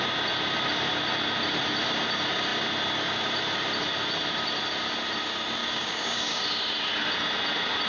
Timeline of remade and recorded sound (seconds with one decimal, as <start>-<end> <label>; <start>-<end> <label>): 0.0-5.6 recorded; 5.6-6.4 remade; 6.4-7.9 recorded

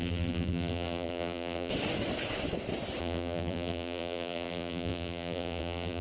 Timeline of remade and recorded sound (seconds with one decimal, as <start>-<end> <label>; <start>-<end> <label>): 0.0-1.7 remade; 1.7-3.0 recorded; 3.0-6.0 remade

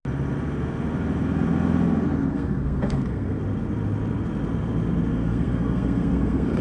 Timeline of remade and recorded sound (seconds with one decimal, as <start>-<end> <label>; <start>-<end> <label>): 0.0-2.3 recorded; 2.3-3.4 remade; 3.4-5.1 recorded; 5.1-6.6 remade

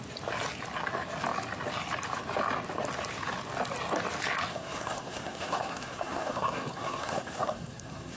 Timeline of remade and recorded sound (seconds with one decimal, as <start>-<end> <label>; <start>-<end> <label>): 0.0-4.5 recorded; 4.5-8.2 remade

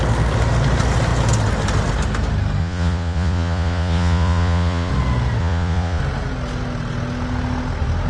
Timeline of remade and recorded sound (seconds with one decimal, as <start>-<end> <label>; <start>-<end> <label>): 0.0-2.6 recorded; 2.6-4.9 remade; 4.9-5.4 recorded; 5.4-6.0 remade; 6.0-8.1 recorded

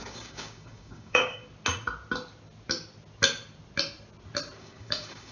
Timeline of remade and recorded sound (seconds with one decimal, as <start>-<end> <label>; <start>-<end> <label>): 0.0-1.4 remade; 1.4-4.6 recorded; 4.6-5.3 remade

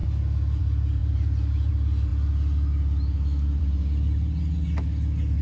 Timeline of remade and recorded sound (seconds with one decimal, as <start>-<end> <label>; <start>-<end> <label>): 0.0-1.0 recorded; 1.0-1.7 remade; 1.7-5.4 recorded

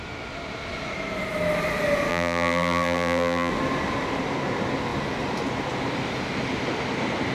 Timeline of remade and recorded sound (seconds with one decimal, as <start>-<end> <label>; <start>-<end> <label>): 0.0-2.1 recorded; 2.1-3.5 remade; 3.5-7.3 recorded